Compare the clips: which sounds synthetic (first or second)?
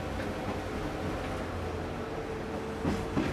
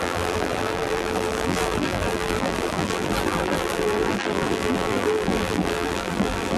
second